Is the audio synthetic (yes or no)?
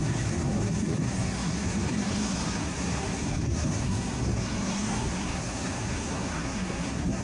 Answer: yes